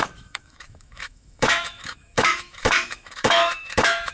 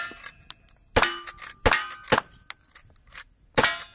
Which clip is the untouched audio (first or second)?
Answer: second